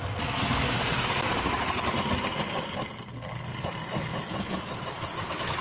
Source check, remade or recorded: recorded